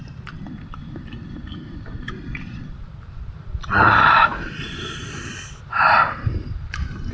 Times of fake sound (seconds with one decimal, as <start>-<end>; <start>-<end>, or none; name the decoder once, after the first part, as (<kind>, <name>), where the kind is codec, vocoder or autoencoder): 0.0-0.8 (vocoder, BigVGAN v2); 1.6-7.1